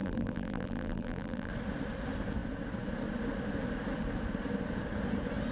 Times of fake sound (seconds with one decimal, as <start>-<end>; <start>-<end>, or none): 0.0-1.5